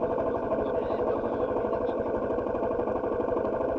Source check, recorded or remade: recorded